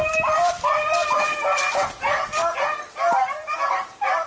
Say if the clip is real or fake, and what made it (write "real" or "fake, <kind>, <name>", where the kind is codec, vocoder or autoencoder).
real